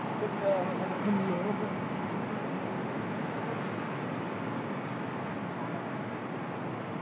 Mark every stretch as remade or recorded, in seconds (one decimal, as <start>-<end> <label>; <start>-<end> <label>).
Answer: 0.0-7.0 recorded